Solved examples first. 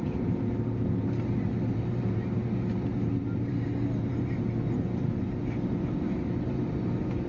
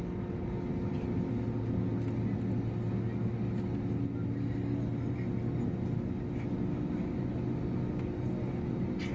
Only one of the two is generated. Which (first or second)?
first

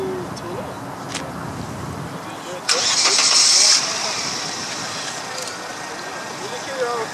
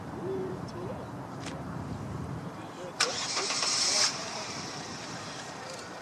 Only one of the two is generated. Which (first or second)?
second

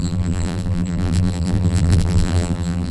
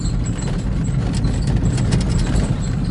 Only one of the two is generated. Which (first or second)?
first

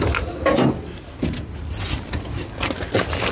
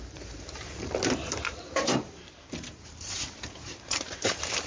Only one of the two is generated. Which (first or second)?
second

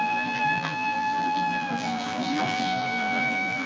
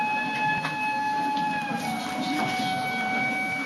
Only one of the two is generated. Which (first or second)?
first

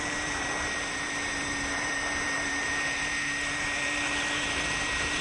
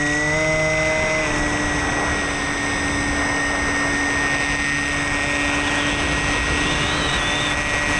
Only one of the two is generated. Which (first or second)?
first